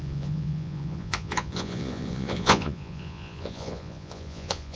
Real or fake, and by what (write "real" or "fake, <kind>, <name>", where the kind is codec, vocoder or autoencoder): fake, vocoder, Vocos